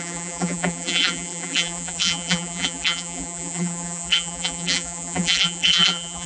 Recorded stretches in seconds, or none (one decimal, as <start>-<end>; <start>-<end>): none

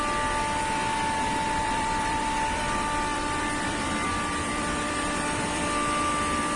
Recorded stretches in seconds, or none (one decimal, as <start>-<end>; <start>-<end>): 0.0-1.6; 5.6-6.6